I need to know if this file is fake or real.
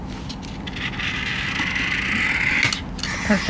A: real